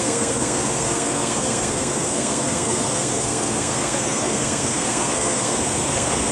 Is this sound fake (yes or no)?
yes